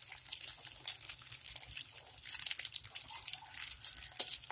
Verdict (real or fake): real